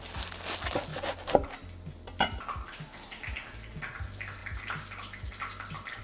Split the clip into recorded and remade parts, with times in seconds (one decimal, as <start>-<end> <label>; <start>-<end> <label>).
0.0-6.0 recorded